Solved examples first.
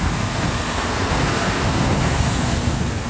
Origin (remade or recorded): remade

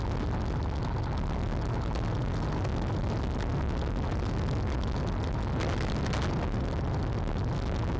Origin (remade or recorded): recorded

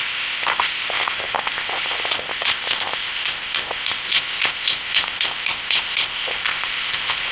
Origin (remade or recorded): remade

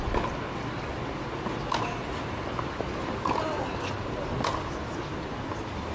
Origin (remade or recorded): recorded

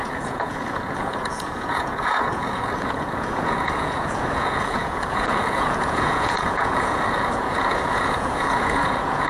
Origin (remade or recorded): remade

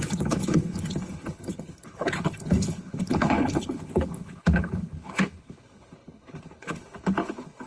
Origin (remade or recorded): remade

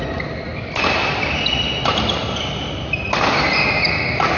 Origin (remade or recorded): recorded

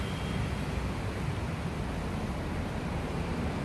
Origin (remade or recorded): recorded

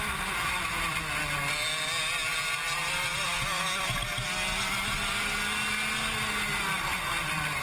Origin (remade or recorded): recorded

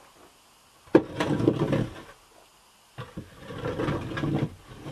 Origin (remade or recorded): recorded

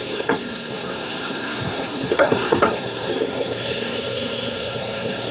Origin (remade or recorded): remade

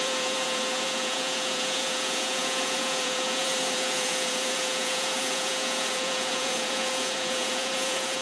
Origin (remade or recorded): remade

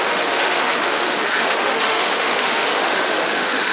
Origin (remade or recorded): remade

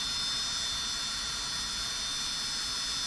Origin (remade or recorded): recorded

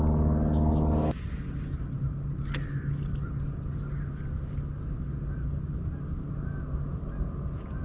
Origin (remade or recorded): recorded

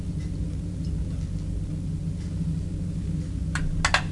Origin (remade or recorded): recorded